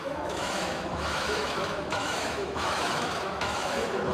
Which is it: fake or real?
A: fake